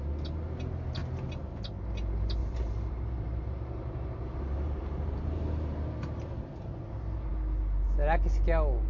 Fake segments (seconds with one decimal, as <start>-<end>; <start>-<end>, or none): 2.4-5.4